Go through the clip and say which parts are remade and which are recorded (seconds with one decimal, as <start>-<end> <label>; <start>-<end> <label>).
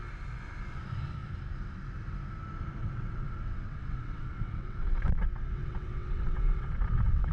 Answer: 0.0-2.8 recorded; 2.8-7.3 remade